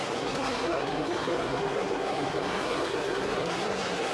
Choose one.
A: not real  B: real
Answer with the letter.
A